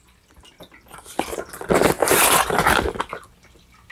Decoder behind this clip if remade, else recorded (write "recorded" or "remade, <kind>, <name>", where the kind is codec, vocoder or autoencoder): recorded